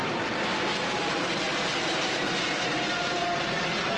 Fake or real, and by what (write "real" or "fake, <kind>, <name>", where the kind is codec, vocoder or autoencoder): fake, vocoder, BigVGAN v2